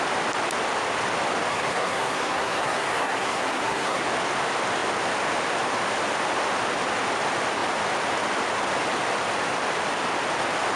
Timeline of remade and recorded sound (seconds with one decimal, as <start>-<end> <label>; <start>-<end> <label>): 0.0-1.5 recorded; 1.5-4.0 remade; 4.0-10.8 recorded